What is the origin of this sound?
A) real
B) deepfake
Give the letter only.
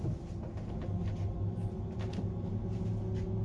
A